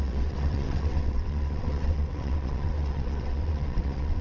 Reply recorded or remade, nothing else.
remade